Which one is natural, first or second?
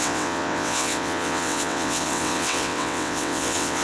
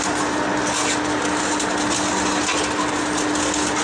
second